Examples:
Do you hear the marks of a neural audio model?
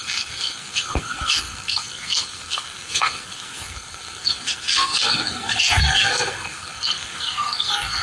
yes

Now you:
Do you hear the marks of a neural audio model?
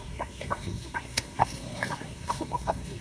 yes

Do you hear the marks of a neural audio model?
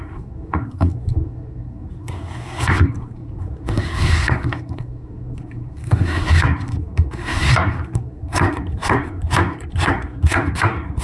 yes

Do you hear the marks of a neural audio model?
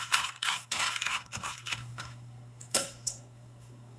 yes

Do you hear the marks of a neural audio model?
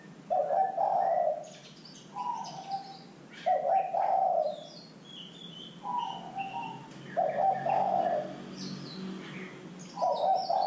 no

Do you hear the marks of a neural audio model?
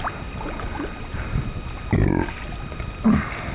no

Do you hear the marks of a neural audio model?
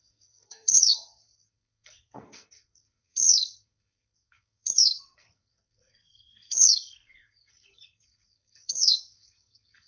yes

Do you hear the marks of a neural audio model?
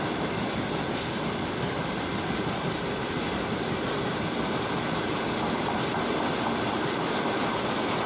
no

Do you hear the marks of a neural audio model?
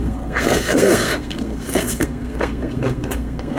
yes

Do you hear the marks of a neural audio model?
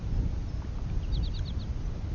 no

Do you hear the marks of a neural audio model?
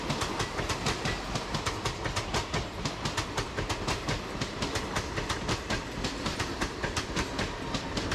no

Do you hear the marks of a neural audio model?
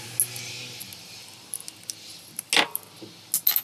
no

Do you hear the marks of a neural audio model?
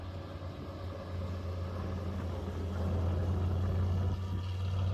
no